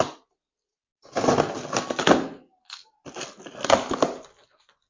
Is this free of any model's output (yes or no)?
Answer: yes